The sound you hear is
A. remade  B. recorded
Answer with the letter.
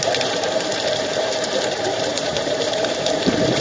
A